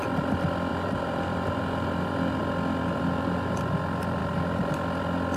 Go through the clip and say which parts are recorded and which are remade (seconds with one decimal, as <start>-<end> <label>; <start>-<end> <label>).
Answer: 0.0-0.7 recorded; 0.7-2.4 remade; 2.4-2.8 recorded; 2.8-3.6 remade; 3.6-5.4 recorded